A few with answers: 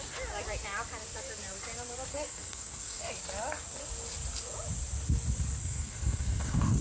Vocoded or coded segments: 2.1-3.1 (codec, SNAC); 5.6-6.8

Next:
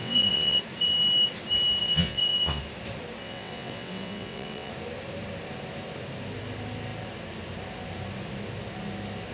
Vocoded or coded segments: 0.0-0.6 (vocoder, WaveNeXt); 1.8-2.6; 3.2-4.7

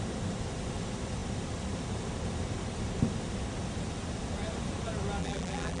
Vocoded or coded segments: 5.2-5.8 (vocoder, BigVGAN v2)